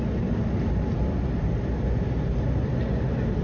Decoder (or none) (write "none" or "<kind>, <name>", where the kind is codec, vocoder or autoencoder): none